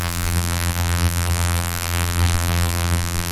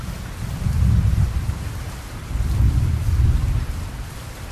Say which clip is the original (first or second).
second